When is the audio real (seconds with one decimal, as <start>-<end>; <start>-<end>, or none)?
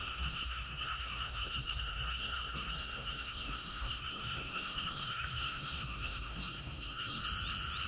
7.2-7.9